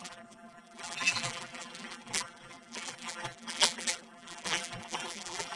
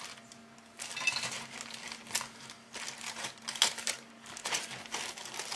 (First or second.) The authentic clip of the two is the second